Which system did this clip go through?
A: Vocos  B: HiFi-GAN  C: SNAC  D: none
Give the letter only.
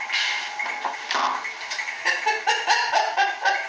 D